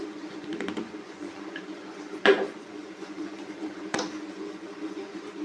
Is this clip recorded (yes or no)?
no